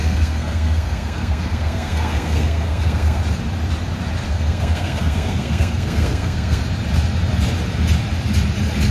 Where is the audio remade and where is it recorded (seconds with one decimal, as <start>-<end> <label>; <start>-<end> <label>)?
0.0-3.2 remade; 3.2-4.2 recorded; 4.2-6.6 remade; 6.6-8.9 recorded